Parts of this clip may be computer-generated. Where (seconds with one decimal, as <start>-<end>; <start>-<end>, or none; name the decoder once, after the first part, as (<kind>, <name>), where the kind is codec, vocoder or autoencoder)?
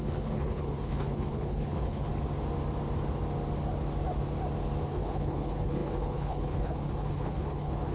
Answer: 0.0-2.1 (codec, HILCodec); 4.9-7.9